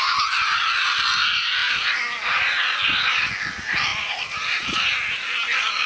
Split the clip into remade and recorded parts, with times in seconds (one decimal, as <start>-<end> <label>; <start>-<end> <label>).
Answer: 0.0-5.9 recorded